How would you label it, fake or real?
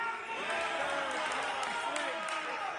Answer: real